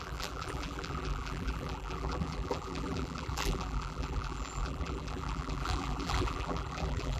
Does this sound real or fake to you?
fake